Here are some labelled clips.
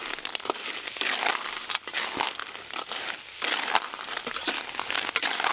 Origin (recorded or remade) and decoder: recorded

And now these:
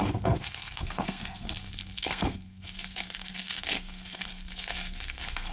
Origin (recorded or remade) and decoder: remade, codec, SNAC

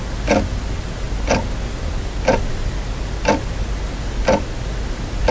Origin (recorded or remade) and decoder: recorded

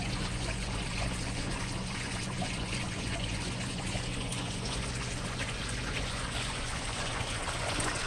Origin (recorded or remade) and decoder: remade, vocoder, Vocos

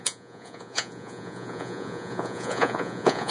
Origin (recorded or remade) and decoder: remade, vocoder, Vocos